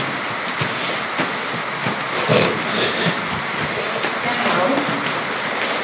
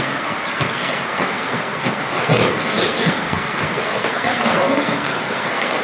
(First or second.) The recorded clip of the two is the first